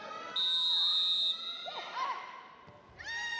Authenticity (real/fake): real